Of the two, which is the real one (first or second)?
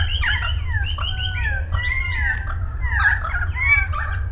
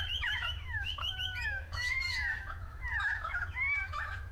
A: first